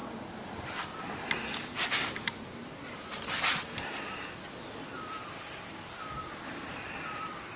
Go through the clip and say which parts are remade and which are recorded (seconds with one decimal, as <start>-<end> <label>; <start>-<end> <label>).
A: 0.0-7.6 recorded